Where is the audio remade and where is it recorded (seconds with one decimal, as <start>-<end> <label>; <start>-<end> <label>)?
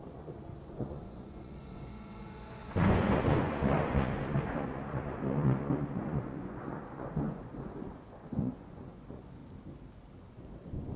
0.0-9.4 remade; 9.4-10.3 recorded; 10.3-11.0 remade